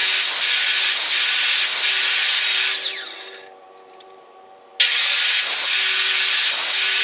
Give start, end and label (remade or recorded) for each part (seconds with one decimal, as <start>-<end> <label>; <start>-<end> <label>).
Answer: 0.0-7.0 recorded